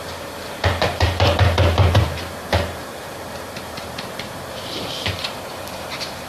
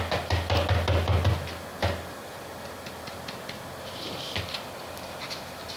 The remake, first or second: first